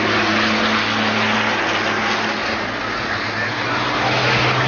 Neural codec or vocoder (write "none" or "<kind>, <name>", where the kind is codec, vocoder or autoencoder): none